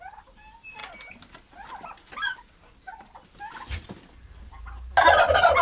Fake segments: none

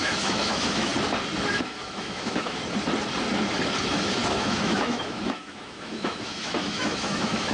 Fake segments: 0.0-0.9 (autoencoder, DAC-VAE); 1.5-2.6; 3.8-7.5

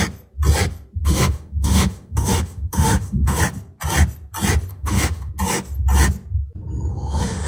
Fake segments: 1.0-3.4 (autoencoder, DAC-VAE); 4.7-5.3; 6.9-7.5

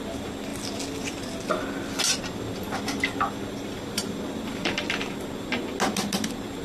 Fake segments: none

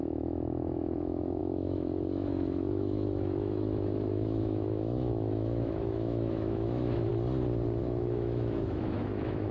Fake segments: 0.0-7.1 (autoencoder, DAC-VAE); 7.8-9.5